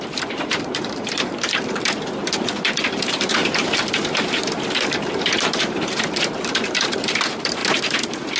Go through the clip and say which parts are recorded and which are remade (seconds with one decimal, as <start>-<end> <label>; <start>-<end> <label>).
0.0-7.6 remade; 7.6-8.4 recorded